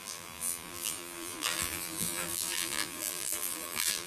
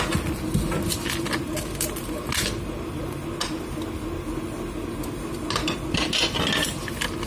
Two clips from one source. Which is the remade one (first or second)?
first